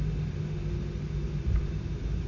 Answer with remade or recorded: recorded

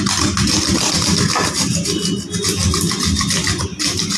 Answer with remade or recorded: recorded